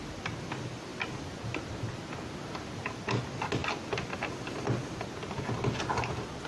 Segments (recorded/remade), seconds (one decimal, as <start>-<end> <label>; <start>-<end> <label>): 0.0-6.5 recorded